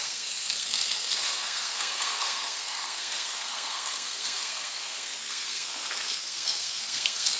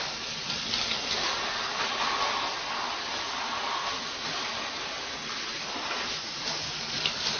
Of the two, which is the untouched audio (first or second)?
second